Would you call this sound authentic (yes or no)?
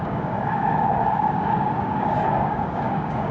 no